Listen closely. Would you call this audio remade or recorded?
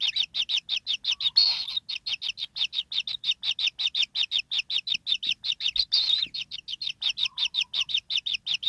recorded